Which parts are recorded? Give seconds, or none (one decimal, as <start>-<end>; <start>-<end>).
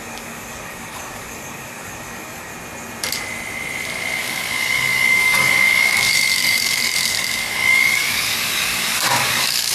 2.5-4.2